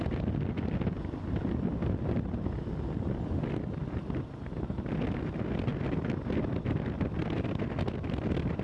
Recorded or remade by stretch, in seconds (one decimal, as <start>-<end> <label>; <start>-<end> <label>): 0.0-8.6 recorded